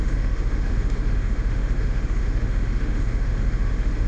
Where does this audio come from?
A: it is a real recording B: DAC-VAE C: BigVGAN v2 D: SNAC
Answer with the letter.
B